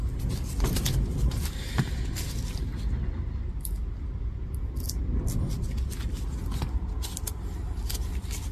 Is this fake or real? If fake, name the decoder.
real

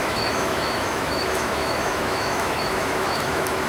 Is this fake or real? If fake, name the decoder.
fake, autoencoder, DAC-VAE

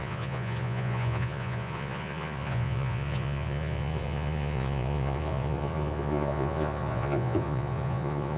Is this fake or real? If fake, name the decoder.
fake, vocoder, Vocos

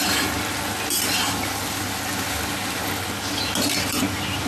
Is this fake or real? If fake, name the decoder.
real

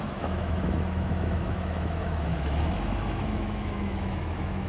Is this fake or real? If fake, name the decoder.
fake, autoencoder, DAC-VAE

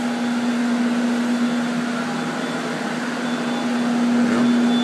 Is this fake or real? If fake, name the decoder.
real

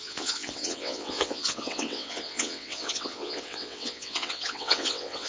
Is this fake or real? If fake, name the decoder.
fake, vocoder, WaveNeXt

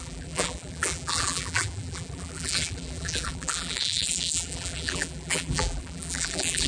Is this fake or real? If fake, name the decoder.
fake, vocoder, BigVGAN v2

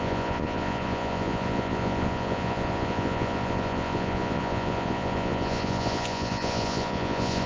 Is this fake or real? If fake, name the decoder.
fake, vocoder, Vocos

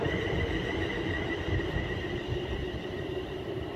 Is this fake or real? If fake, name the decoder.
real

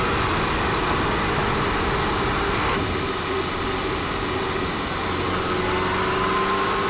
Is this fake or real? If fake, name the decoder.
real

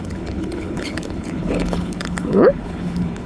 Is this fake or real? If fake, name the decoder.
fake, codec, HILCodec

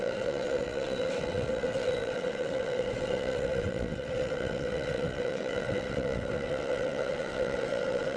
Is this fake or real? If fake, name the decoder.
fake, vocoder, WaveNeXt